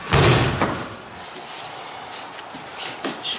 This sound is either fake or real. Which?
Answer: real